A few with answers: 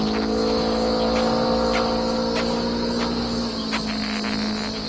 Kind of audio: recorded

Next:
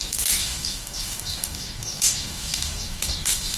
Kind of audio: remade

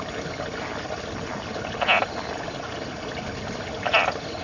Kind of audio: recorded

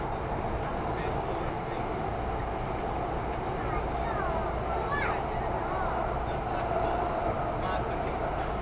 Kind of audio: recorded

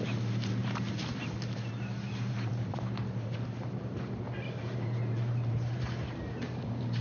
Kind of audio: remade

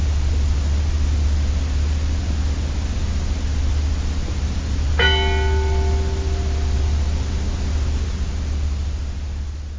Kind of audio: recorded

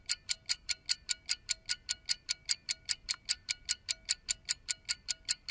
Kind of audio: recorded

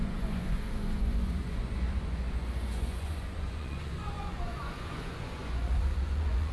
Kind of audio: remade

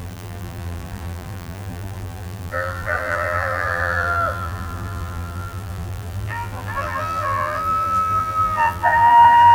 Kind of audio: remade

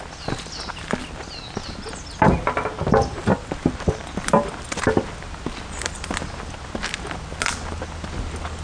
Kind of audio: recorded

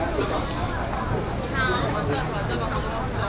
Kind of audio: remade